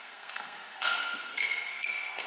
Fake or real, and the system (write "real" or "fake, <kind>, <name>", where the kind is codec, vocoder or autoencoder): fake, codec, SNAC